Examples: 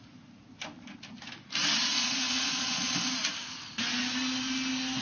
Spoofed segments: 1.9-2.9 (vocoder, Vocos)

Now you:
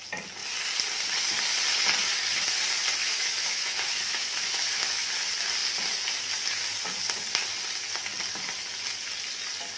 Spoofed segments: 3.0-5.1 (autoencoder, DAC-VAE)

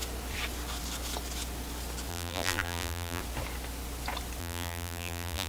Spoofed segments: 2.1-3.2 (vocoder, BigVGAN v2); 4.4-5.5